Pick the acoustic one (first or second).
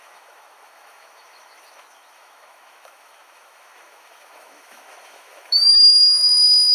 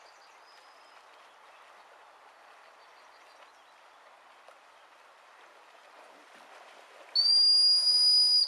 second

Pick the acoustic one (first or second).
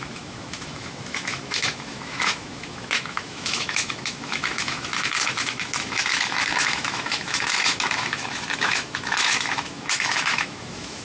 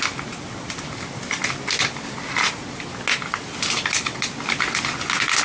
second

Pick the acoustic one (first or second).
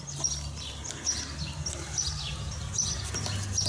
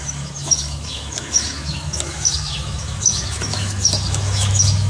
first